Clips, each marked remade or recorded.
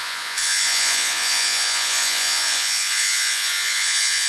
remade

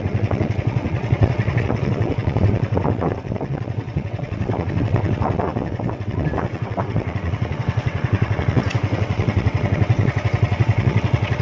remade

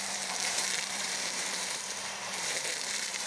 remade